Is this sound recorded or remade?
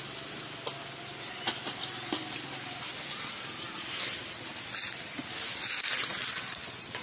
recorded